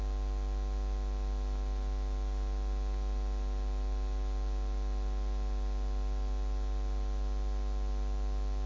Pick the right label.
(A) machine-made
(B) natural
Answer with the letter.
B